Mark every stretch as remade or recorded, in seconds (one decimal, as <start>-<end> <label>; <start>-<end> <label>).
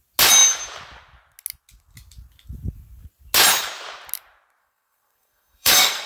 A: 0.0-4.6 recorded; 4.6-6.1 remade